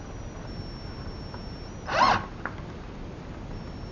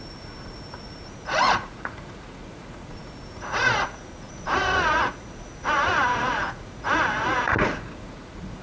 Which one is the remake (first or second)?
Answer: second